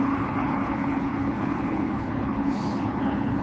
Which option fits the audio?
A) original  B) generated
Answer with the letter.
B